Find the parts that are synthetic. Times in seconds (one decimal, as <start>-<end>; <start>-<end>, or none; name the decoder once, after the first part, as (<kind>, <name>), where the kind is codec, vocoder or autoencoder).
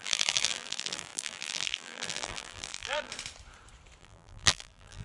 0.0-3.1 (vocoder, BigVGAN v2); 4.0-5.0